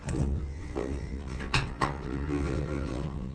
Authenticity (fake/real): fake